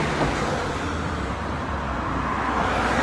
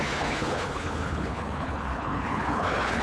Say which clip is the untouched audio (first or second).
first